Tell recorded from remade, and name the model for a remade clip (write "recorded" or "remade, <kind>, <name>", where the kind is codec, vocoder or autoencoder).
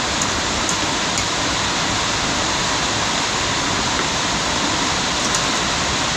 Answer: recorded